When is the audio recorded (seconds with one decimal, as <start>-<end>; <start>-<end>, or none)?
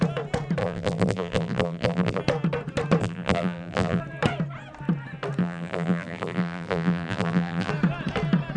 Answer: 0.0-0.6; 2.2-3.0; 4.0-5.4; 7.7-8.6